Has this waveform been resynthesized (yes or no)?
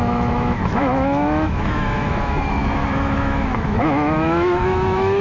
yes